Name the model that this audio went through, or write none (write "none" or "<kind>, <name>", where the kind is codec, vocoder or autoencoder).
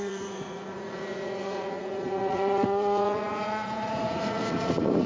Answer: vocoder, Vocos